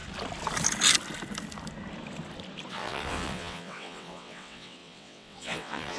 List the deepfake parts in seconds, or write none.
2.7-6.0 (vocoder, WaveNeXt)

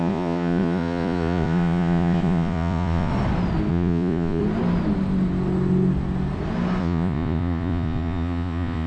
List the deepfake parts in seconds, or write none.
0.0-3.1 (vocoder, Vocos); 3.7-4.4; 6.8-8.9

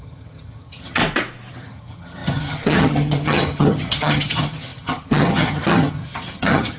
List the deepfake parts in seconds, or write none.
0.0-1.0 (vocoder, HiFi-GAN); 1.5-6.8

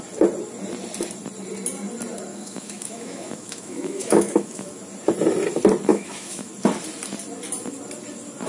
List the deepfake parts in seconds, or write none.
2.3-4.7 (autoencoder, DAC-VAE); 5.9-6.5

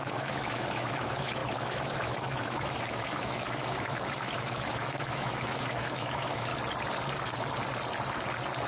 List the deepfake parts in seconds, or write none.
0.0-6.5 (autoencoder, DAC-VAE)

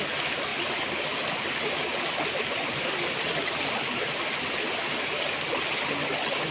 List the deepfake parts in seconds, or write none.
none

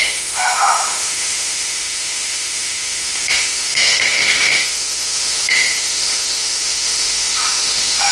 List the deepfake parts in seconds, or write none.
0.0-8.1 (autoencoder, DAC-VAE)